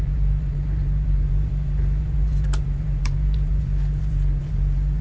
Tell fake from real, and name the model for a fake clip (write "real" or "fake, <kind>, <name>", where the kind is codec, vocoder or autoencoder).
fake, vocoder, BigVGAN v2